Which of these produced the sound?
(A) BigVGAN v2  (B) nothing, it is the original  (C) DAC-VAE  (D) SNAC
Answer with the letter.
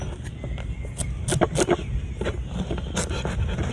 B